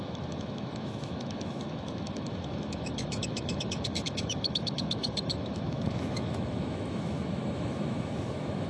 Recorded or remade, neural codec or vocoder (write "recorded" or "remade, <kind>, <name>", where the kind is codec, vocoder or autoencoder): remade, autoencoder, DAC-VAE